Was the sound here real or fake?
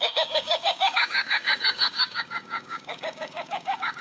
fake